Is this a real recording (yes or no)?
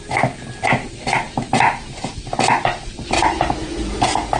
yes